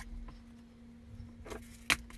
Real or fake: real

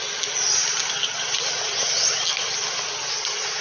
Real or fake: real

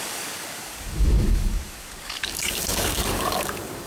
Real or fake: fake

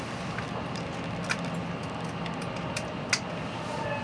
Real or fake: real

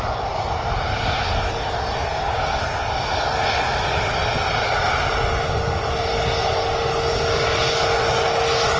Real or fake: real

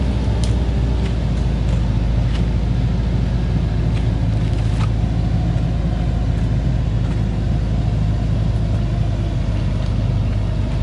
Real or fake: real